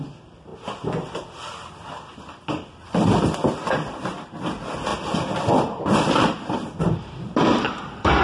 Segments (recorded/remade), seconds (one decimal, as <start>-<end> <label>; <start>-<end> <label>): 0.0-0.5 remade; 0.5-1.1 recorded; 1.1-8.2 remade